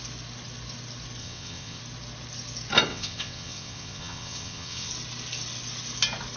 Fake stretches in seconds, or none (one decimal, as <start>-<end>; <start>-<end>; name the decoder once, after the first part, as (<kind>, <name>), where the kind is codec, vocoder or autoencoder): 1.2-1.8 (vocoder, WaveNeXt); 2.9-4.9